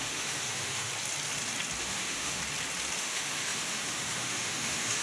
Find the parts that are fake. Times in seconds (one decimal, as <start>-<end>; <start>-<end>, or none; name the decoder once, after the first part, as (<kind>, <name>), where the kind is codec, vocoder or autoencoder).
0.0-0.9 (autoencoder, DAC-VAE); 1.8-2.4; 3.0-5.0